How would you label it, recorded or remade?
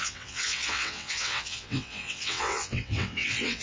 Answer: remade